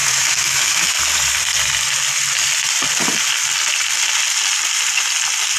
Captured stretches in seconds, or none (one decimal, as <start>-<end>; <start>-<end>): 1.0-5.6